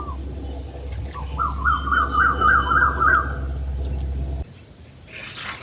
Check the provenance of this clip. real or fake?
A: real